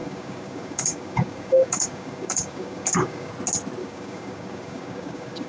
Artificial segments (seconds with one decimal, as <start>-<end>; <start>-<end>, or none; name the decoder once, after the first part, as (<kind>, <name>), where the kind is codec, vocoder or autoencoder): 0.0-3.3 (codec, DAC); 3.8-5.5